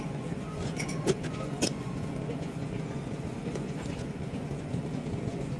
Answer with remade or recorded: remade